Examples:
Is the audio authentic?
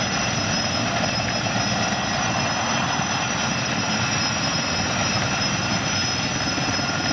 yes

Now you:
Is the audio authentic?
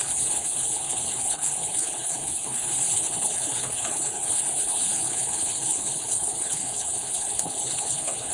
no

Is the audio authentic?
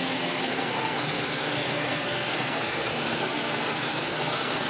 no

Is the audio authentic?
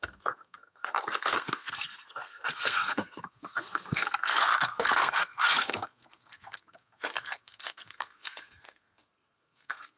no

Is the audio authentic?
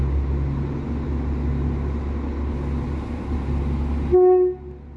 yes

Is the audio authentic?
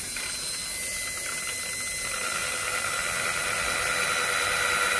yes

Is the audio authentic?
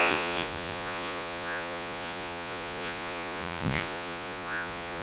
no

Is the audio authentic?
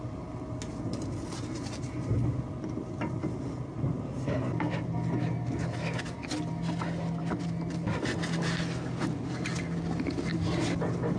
yes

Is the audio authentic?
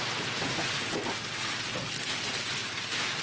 yes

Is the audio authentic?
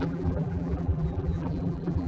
no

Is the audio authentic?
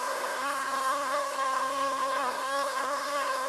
no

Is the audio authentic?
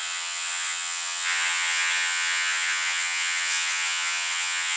no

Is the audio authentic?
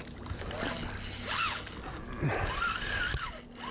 yes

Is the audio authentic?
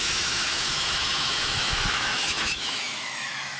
no